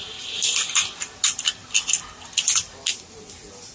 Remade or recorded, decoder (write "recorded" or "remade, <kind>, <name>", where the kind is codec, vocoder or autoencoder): recorded